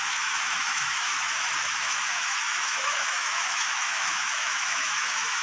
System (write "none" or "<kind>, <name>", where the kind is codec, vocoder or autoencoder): autoencoder, DAC-VAE